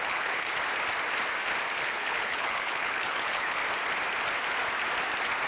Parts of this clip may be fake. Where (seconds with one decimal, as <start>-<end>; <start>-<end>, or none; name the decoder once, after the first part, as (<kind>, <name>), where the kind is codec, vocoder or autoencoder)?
0.0-0.5 (codec, HILCodec); 1.8-3.6